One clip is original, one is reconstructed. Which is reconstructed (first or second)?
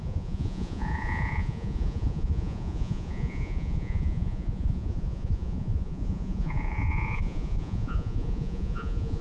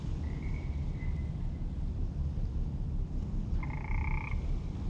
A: first